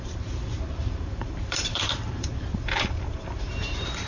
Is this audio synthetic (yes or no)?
yes